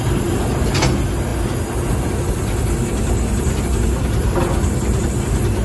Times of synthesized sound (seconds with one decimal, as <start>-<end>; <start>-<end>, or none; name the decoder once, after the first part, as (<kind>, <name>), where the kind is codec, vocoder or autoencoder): none